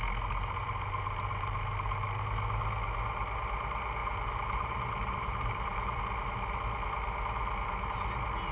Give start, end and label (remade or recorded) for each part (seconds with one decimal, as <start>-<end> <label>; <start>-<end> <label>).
0.0-4.0 recorded; 4.0-6.0 remade; 6.0-8.5 recorded